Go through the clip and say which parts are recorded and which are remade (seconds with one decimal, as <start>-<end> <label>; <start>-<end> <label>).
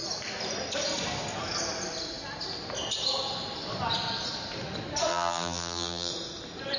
0.0-5.1 recorded; 5.1-6.1 remade; 6.1-6.8 recorded